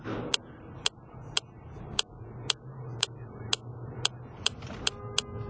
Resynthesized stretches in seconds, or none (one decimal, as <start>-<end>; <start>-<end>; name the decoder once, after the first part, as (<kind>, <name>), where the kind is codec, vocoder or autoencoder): none